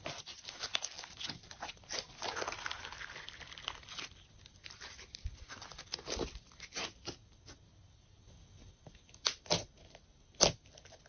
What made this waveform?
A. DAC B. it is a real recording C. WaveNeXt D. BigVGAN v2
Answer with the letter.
B